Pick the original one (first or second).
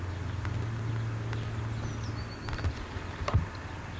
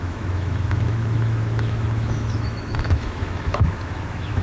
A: first